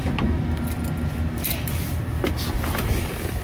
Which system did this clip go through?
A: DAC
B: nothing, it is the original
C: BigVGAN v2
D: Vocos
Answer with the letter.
B